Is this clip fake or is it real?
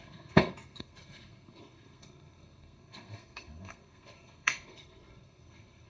fake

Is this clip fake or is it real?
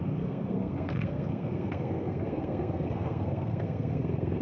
fake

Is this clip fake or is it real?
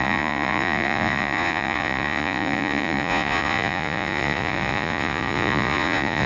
fake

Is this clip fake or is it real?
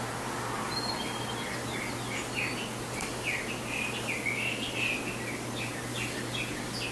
real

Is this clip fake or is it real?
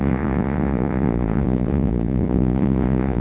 fake